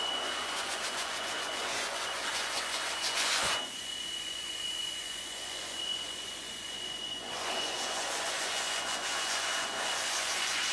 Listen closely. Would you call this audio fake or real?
fake